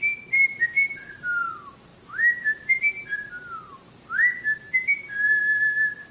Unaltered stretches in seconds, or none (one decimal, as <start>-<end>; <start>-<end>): 0.0-6.1